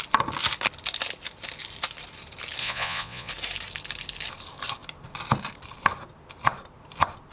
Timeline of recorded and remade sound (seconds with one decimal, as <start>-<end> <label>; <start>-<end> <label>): 0.0-2.6 recorded; 2.6-3.3 remade; 3.3-7.3 recorded